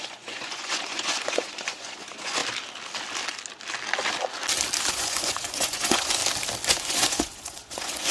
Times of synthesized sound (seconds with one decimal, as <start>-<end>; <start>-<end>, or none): 0.0-2.4; 4.9-6.2; 6.7-8.1